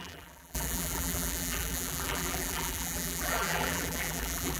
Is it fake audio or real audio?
fake